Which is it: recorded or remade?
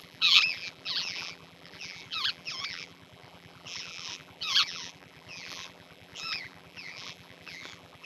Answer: remade